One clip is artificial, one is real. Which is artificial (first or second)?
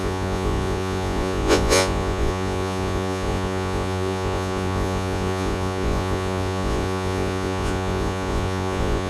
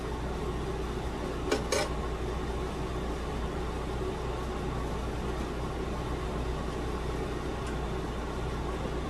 first